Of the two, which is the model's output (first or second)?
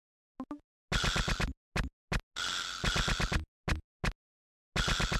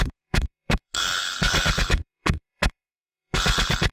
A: second